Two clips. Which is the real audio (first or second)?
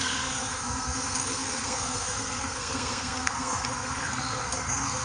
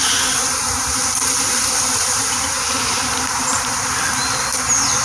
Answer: second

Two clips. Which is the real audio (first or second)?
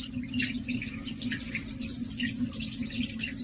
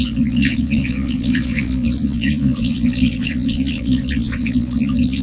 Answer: first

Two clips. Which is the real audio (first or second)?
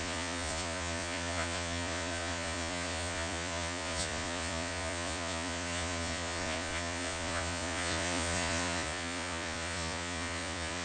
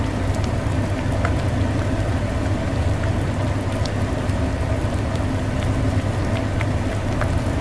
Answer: second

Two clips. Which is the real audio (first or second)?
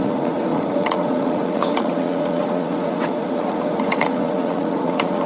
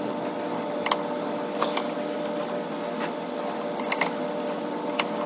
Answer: second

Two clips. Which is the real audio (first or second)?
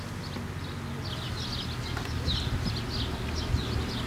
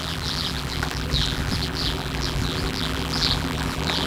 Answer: first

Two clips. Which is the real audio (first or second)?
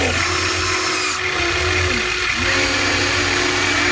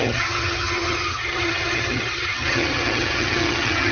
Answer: first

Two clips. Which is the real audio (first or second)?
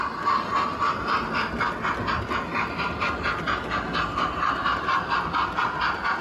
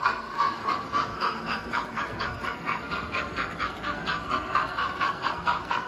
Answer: first